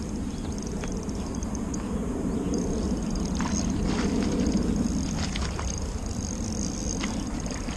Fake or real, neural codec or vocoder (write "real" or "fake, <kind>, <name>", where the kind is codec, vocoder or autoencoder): real